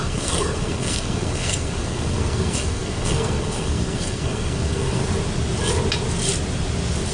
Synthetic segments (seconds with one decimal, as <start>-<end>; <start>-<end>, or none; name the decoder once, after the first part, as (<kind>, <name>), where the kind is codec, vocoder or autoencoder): 0.0-5.0 (codec, SNAC)